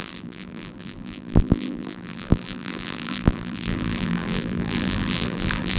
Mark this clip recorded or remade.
remade